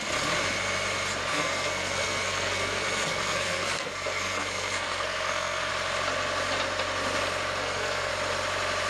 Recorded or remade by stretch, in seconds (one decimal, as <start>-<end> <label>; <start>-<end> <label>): 0.0-1.3 recorded; 1.3-5.7 remade; 5.7-7.6 recorded; 7.6-8.1 remade; 8.1-8.9 recorded